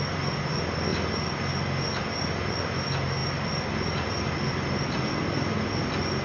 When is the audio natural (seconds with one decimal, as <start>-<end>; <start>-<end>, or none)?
0.0-6.2